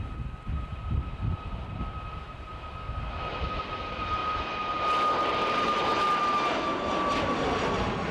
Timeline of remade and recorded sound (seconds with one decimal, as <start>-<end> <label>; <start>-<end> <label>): 0.0-0.7 recorded; 0.7-1.7 remade; 1.7-8.1 recorded